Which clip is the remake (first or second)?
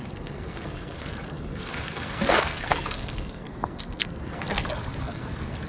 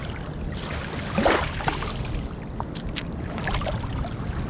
first